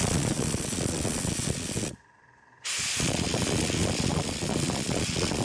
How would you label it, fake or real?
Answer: fake